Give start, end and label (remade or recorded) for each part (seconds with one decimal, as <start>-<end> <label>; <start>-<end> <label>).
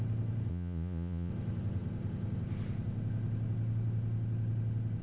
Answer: 0.0-0.5 recorded; 0.5-1.3 remade; 1.3-5.0 recorded